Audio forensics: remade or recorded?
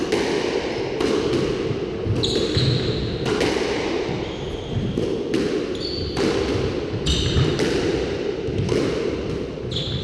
recorded